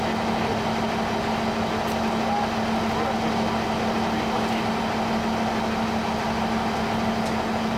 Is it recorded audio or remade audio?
recorded